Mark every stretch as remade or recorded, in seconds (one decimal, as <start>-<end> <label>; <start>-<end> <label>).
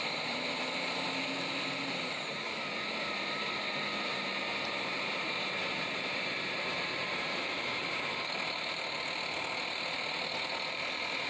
0.0-0.6 remade; 0.6-4.1 recorded; 4.1-8.1 remade; 8.1-11.3 recorded